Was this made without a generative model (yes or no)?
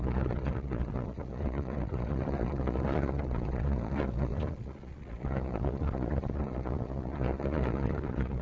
no